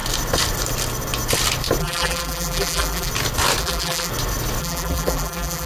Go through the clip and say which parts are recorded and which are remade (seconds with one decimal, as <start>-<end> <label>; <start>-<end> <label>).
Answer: 0.0-1.8 recorded; 1.8-3.1 remade; 3.1-3.6 recorded; 3.6-4.1 remade; 4.1-4.6 recorded; 4.6-5.7 remade

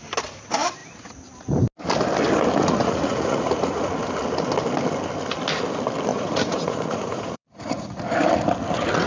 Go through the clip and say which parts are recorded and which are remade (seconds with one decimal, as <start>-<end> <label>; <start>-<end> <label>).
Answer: 0.0-2.6 recorded; 2.6-3.9 remade; 3.9-6.1 recorded; 6.1-8.0 remade; 8.0-9.1 recorded

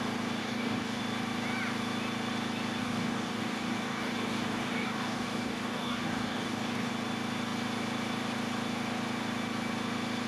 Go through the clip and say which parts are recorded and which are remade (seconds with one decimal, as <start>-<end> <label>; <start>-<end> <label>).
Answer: 0.0-0.4 recorded; 0.4-1.0 remade; 1.0-2.8 recorded; 2.8-6.9 remade; 6.9-10.3 recorded

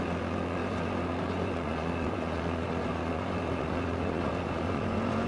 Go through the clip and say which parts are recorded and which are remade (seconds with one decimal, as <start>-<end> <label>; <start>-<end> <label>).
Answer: 0.0-5.3 remade